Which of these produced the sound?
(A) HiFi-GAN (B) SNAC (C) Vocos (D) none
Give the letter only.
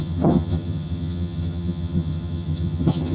A